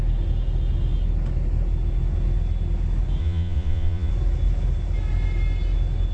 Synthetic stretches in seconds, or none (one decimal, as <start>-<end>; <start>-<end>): 3.2-4.1